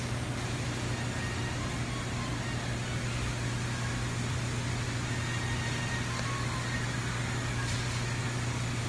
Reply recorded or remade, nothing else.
recorded